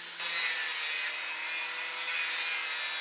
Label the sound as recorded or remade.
recorded